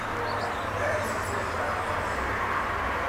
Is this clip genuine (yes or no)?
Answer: yes